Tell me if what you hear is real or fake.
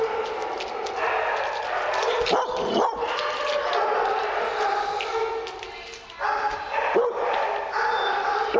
real